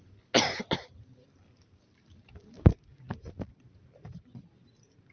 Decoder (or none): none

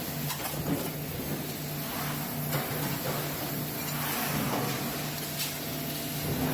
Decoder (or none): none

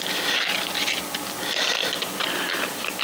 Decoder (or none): none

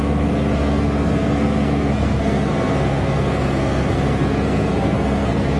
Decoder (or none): codec, SNAC